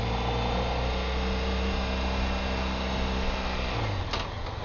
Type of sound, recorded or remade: recorded